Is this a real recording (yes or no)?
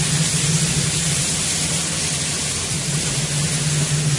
yes